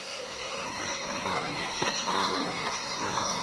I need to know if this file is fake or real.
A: fake